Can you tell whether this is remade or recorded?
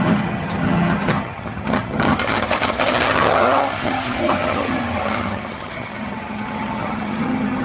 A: remade